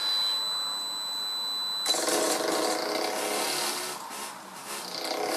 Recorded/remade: recorded